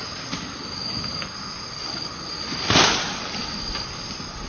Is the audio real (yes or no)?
yes